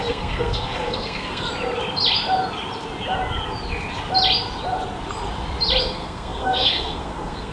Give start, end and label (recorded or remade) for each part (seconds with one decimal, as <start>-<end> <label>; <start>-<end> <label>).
0.0-1.5 remade; 1.5-5.8 recorded; 5.8-7.5 remade